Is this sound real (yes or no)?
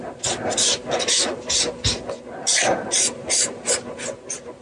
yes